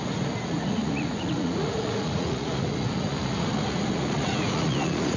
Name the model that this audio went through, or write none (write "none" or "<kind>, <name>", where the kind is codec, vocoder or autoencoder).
vocoder, Vocos